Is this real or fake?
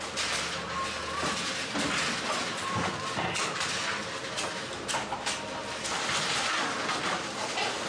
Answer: real